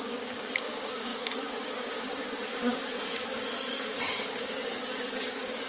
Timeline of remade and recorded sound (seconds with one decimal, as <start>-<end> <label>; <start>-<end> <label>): 0.0-5.7 remade